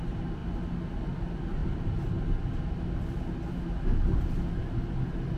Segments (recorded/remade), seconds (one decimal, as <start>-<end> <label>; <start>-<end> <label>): 0.0-5.4 recorded